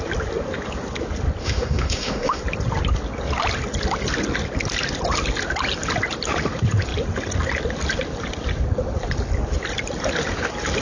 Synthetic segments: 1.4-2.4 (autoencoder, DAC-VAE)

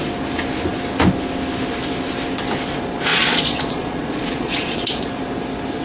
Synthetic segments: 3.1-5.1 (vocoder, Vocos)

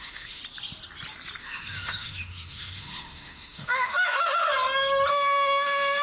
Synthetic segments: 0.0-0.4 (autoencoder, DAC-VAE); 1.4-4.5; 5.1-6.0

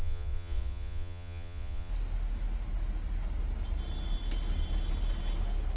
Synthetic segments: 0.0-1.9 (vocoder, Vocos)

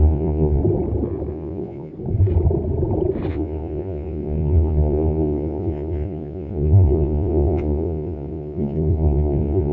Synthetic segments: 0.0-0.6 (vocoder, Vocos); 1.3-1.9; 3.3-9.7